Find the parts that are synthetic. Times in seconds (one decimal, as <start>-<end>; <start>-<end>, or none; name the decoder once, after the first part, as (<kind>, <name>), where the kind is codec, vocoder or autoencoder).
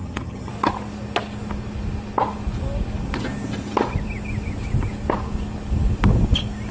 0.0-0.5 (vocoder, HiFi-GAN)